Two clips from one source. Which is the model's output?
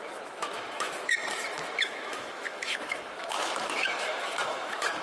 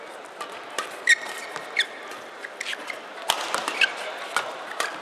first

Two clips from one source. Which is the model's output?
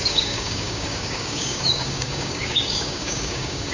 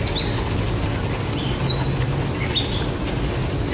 first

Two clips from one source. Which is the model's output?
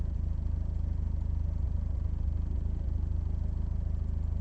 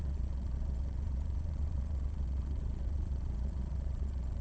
second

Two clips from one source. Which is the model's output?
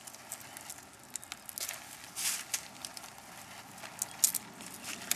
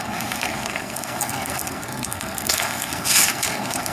second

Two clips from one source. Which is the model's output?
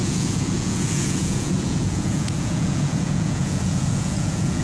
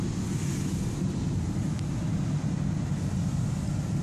first